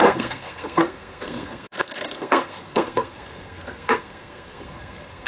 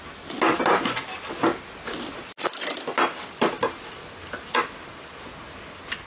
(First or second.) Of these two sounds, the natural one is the second